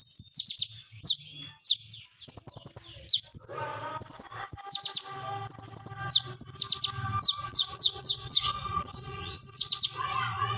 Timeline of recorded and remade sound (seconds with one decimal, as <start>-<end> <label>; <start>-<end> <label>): 0.0-7.5 recorded; 7.5-10.6 remade